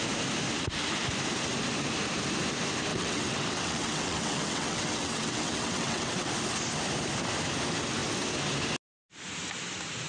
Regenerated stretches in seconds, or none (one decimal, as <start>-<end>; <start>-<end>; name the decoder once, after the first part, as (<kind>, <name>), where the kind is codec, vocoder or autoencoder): 2.9-6.3 (vocoder, WaveNeXt)